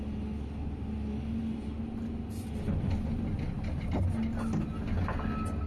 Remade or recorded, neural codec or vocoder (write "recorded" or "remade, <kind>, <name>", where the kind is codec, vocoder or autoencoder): recorded